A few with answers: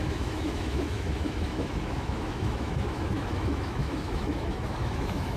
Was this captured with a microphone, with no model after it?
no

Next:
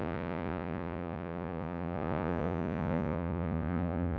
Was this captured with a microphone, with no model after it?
no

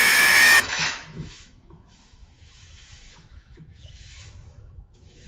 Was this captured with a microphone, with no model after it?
no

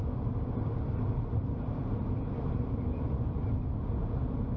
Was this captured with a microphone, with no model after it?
yes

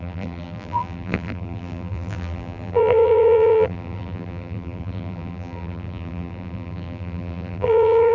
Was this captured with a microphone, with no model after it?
no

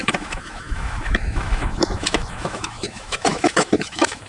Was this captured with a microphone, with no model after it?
no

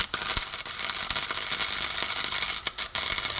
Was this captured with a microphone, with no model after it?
yes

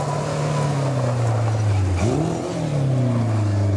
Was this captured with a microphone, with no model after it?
yes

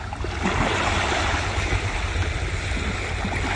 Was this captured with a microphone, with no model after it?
yes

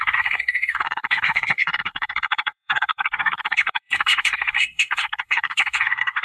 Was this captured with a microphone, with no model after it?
no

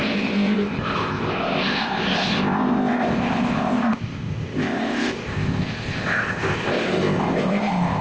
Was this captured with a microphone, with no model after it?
no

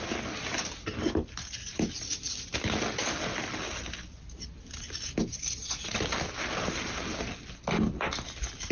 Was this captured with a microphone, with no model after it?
yes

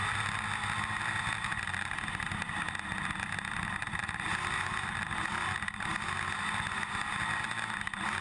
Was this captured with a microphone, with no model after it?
yes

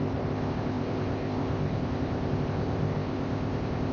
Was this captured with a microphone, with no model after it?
no